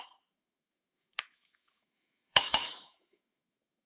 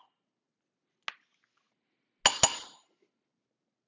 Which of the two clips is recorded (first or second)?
second